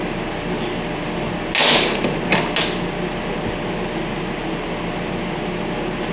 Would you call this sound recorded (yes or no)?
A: yes